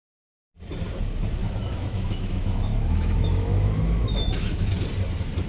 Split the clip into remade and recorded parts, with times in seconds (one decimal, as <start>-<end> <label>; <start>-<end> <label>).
0.0-1.4 recorded; 1.4-4.7 remade; 4.7-5.5 recorded